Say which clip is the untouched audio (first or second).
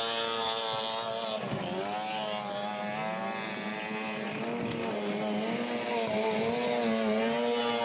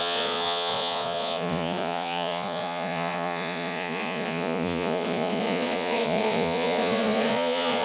first